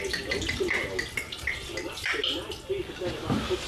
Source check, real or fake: real